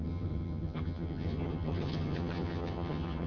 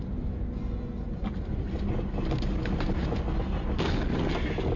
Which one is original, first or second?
second